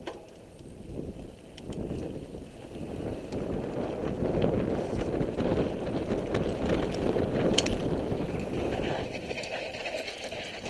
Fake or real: real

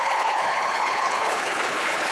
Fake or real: fake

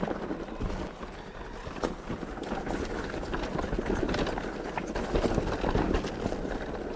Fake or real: real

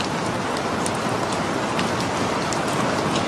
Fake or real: real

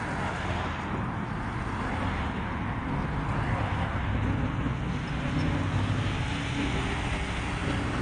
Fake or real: real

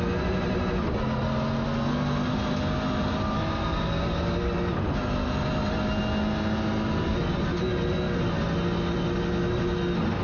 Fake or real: real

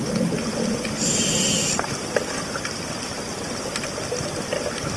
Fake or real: real